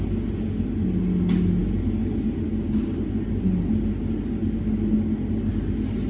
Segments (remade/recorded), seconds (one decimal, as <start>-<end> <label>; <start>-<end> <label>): 0.0-6.1 recorded